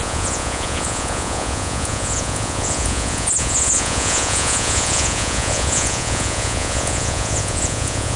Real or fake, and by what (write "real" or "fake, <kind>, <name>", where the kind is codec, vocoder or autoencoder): fake, vocoder, Vocos